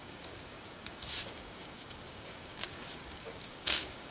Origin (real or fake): fake